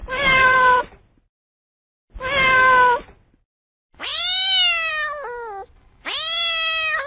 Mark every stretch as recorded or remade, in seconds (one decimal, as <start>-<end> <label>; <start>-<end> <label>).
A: 0.0-0.8 remade; 0.8-7.1 recorded